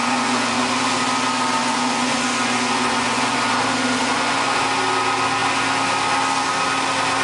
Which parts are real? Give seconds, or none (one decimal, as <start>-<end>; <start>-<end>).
0.7-1.6; 3.4-4.0; 4.6-7.2